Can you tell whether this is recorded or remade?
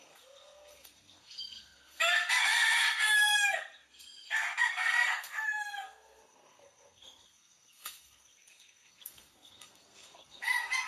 remade